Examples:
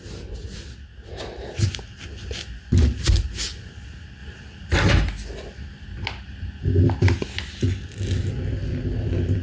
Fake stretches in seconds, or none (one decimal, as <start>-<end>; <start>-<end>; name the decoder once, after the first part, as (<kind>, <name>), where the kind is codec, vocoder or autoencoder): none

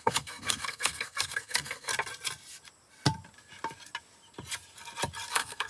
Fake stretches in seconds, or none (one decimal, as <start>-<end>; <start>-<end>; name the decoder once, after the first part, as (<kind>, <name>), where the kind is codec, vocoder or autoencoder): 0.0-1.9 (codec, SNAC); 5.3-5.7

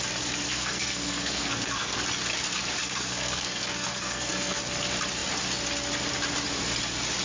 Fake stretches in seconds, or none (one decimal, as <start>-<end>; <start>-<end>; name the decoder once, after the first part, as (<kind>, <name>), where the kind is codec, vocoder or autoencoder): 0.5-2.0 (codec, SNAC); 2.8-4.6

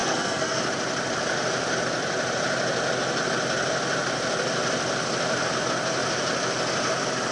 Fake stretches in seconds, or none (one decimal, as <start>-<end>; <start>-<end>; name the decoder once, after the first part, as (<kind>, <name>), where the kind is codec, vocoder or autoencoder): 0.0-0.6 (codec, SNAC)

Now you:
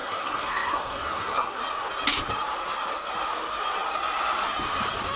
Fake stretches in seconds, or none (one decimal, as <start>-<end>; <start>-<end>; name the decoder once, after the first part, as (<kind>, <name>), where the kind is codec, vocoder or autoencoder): 0.0-1.6 (codec, SNAC)

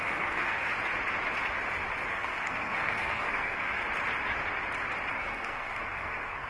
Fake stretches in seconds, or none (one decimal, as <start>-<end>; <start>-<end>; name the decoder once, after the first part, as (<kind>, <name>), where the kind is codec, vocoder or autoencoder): 0.0-0.7 (codec, SNAC); 2.1-3.8; 5.1-6.5

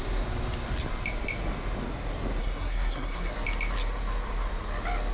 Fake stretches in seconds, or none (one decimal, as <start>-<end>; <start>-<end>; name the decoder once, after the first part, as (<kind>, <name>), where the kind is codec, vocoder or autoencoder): 2.4-3.3 (codec, SNAC)

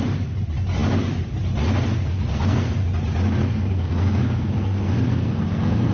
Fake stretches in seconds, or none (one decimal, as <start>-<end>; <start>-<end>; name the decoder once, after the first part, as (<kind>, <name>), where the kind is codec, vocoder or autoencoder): 1.9-2.8 (codec, SNAC); 3.4-5.9